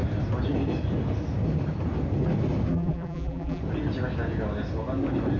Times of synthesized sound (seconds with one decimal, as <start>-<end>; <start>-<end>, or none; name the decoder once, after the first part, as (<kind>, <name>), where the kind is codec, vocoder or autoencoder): 2.7-3.6 (vocoder, BigVGAN v2)